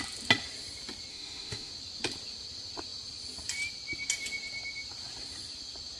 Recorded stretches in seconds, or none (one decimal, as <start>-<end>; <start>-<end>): 0.0-1.1; 1.7-6.0